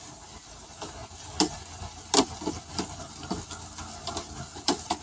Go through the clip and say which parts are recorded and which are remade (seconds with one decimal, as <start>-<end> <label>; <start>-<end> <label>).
0.0-5.0 recorded